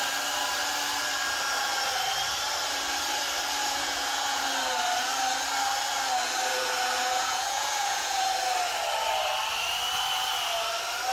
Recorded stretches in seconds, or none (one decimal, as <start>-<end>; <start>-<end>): 0.0-3.6; 4.4-6.5; 8.2-11.1